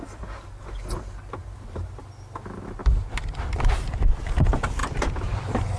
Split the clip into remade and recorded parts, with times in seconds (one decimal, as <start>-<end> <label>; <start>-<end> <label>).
0.0-1.4 recorded; 1.4-2.0 remade; 2.0-2.8 recorded; 2.8-4.3 remade; 4.3-4.8 recorded; 4.8-5.8 remade